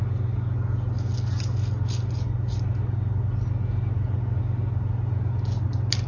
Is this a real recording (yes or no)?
yes